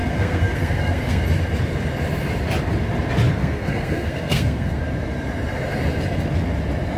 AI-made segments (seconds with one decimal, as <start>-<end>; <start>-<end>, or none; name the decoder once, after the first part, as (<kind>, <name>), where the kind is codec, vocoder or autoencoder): 0.0-1.2 (codec, SNAC); 3.4-4.8